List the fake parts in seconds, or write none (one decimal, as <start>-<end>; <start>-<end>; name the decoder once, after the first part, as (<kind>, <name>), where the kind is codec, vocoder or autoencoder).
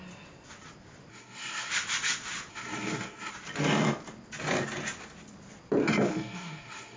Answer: 1.1-1.7 (codec, SNAC); 2.5-3.3; 6.1-7.0